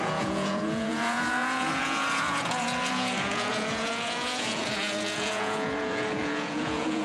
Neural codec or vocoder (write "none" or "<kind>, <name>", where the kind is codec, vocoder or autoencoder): vocoder, Vocos